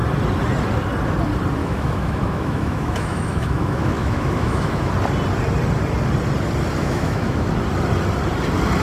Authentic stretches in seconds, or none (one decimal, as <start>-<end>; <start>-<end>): 0.0-1.6; 4.9-6.8; 7.5-8.8